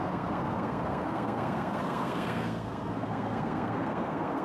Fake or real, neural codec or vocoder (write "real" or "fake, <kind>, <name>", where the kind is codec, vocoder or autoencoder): fake, codec, SNAC